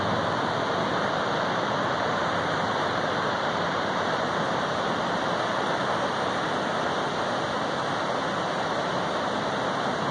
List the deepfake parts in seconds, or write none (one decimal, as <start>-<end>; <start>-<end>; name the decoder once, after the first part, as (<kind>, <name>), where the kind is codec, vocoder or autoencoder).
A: 0.9-5.8 (vocoder, BigVGAN v2)